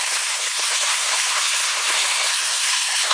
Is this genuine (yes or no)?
no